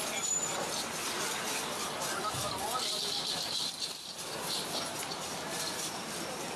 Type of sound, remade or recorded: recorded